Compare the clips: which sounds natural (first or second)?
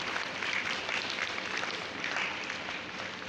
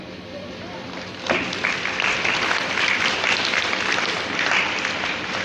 second